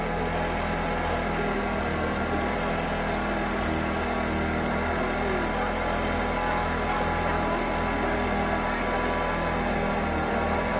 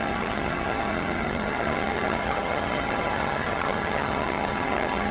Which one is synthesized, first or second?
second